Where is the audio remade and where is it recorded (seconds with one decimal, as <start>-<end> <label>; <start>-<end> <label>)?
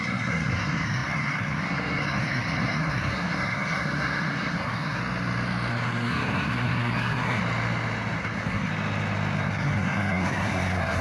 0.0-5.0 remade; 5.0-5.7 recorded; 5.7-7.4 remade; 7.4-8.2 recorded; 8.2-8.7 remade; 8.7-9.4 recorded; 9.4-11.0 remade